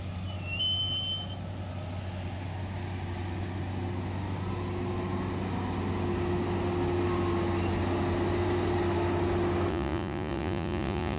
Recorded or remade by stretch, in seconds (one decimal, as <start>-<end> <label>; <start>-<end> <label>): 0.0-9.7 recorded; 9.7-11.2 remade